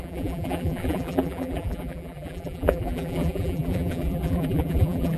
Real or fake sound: fake